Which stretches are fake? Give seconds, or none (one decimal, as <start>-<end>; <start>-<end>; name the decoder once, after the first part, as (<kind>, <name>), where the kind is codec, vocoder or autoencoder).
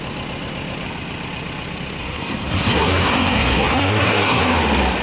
2.0-4.4 (codec, SNAC)